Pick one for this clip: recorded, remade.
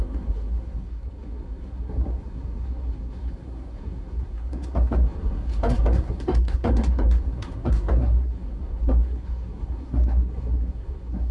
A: remade